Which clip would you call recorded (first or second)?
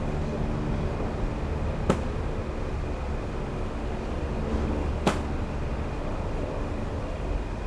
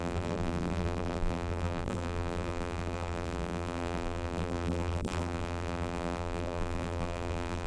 first